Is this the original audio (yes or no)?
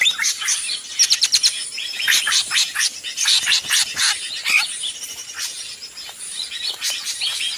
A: no